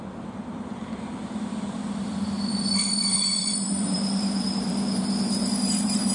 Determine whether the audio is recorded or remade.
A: remade